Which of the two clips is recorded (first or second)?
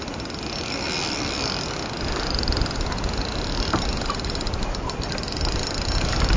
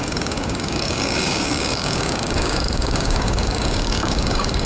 first